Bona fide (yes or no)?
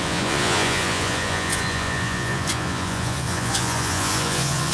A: no